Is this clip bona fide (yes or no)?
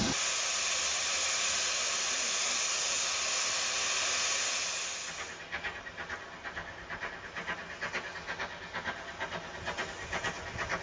yes